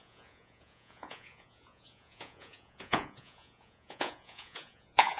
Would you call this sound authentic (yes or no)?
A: no